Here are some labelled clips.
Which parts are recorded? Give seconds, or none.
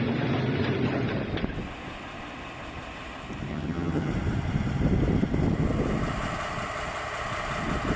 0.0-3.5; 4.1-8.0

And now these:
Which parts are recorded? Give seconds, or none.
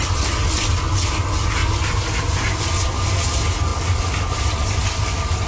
0.0-5.5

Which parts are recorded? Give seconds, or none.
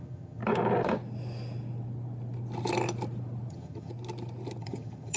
0.4-3.5; 3.9-4.6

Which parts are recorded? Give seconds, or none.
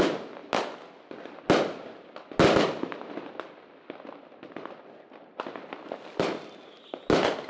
0.0-7.5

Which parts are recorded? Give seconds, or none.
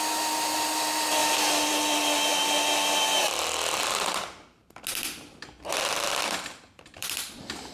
2.3-6.3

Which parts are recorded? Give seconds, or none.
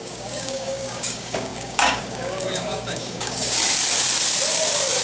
3.6-5.0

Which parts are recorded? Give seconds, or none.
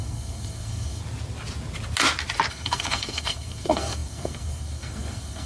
1.0-2.5